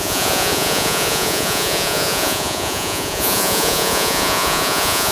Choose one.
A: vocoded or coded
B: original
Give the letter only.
A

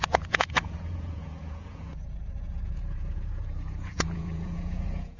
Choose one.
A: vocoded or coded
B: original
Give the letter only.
A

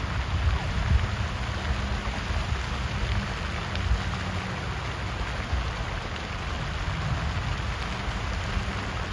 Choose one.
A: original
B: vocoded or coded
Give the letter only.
A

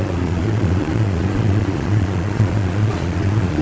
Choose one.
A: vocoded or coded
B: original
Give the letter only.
A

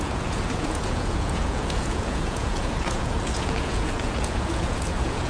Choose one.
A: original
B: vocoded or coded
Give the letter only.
B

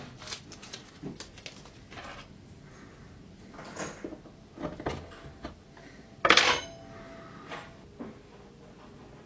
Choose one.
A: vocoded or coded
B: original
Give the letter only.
B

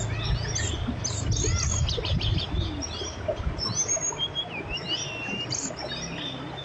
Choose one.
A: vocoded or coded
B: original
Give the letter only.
B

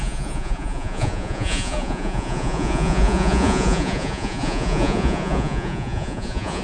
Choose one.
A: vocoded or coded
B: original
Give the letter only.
A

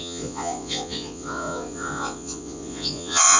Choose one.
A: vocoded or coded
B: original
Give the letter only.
A